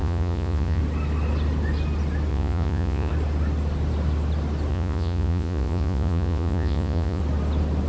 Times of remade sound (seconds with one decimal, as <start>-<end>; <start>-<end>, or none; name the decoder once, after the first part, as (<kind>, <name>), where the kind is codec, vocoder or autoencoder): 0.0-0.8 (vocoder, Vocos); 2.3-3.1; 4.7-7.2